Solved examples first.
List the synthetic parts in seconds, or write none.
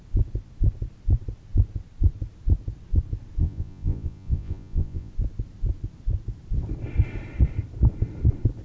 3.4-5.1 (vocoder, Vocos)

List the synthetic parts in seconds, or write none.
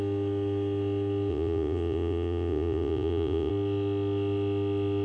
1.3-3.5 (vocoder, Vocos)